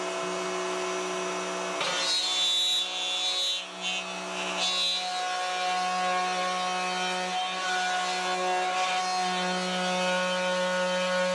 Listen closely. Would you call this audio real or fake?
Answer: real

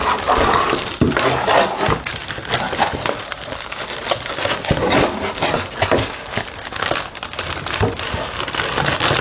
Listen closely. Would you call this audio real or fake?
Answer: real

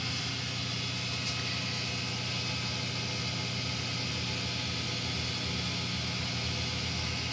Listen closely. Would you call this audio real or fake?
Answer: real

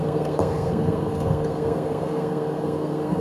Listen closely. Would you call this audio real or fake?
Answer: fake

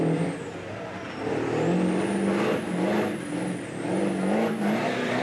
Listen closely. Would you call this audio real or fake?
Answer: real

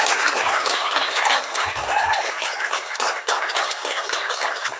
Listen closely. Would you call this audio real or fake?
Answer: fake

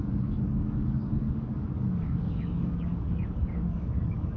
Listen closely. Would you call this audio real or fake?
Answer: fake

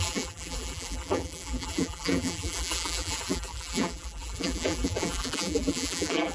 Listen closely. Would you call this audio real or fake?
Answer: fake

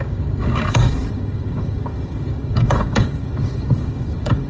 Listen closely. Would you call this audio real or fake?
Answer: fake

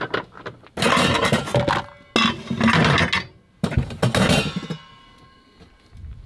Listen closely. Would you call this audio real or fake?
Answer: real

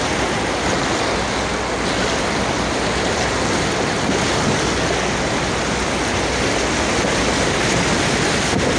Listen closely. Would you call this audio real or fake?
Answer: real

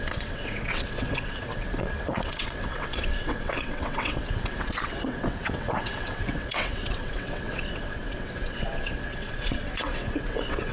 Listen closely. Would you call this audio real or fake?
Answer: fake